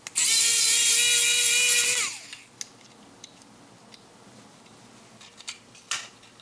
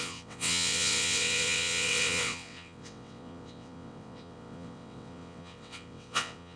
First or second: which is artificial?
second